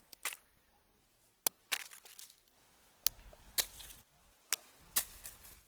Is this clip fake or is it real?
real